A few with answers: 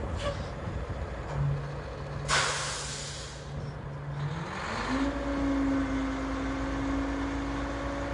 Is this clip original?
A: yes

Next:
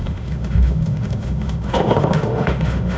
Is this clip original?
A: no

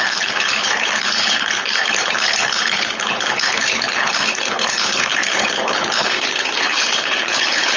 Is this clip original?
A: no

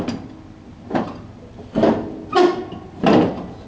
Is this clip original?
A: yes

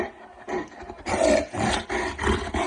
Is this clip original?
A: yes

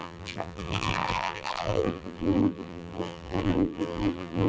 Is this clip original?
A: no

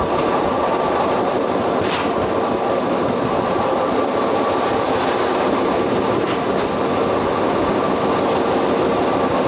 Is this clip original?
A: yes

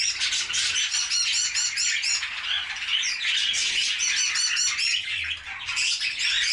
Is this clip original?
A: yes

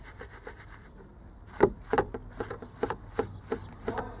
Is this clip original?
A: yes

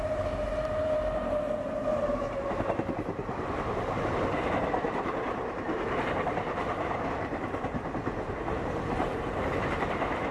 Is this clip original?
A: no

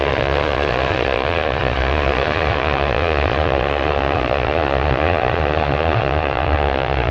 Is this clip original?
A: no